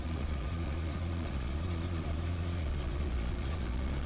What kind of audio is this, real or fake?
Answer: fake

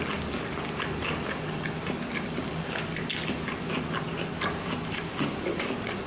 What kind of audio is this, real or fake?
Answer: real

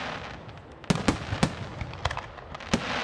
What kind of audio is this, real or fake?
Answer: real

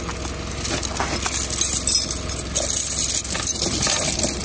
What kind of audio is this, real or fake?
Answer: real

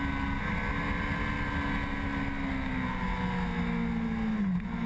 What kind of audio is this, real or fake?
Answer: real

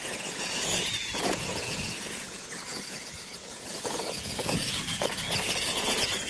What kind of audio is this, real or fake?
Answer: fake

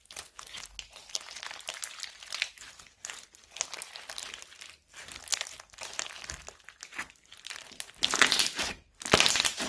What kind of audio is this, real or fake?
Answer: real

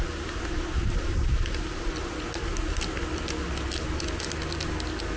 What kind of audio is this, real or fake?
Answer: real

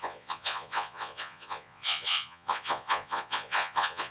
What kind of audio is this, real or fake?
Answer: fake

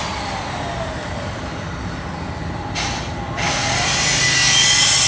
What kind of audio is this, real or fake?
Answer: real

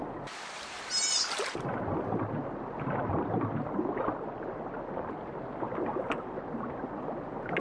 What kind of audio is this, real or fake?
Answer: real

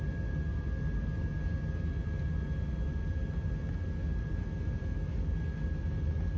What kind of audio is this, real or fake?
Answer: real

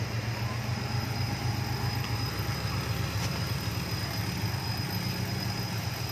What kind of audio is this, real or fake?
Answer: real